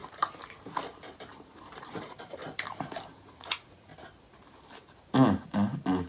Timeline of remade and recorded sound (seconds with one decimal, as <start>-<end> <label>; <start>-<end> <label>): 0.0-1.8 recorded; 1.8-2.4 remade; 2.4-3.1 recorded; 3.1-3.9 remade; 3.9-6.1 recorded